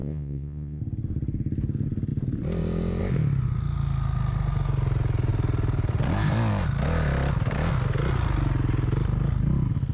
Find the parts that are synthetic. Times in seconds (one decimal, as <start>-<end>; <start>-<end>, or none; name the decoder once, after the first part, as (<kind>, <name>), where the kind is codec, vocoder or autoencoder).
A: 0.0-0.8 (vocoder, Vocos)